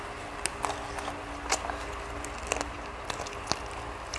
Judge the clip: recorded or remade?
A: recorded